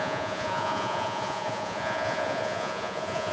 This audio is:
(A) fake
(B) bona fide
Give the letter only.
A